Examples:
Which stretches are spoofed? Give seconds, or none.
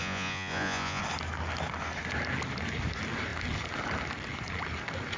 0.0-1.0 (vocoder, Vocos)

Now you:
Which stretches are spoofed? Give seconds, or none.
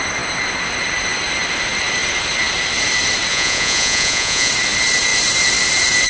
3.3-4.5 (vocoder, Vocos)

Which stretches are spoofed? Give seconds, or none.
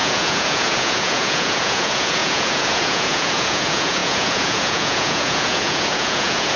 0.0-6.6 (vocoder, Vocos)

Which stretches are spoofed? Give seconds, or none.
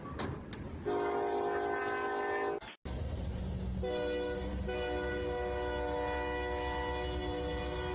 none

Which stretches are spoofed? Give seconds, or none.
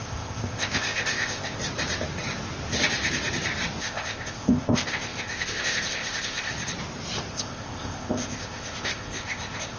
0.0-1.6 (codec, ZipCodec); 3.8-6.5; 7.3-9.8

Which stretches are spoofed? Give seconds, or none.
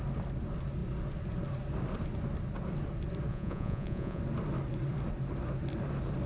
3.3-4.2 (vocoder, Vocos)